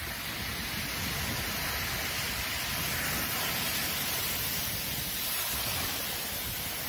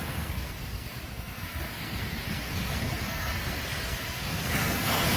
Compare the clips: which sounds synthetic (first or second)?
second